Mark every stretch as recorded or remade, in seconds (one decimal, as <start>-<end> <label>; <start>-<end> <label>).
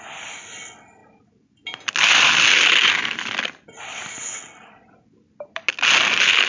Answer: 0.0-6.5 recorded